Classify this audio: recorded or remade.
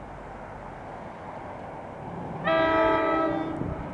recorded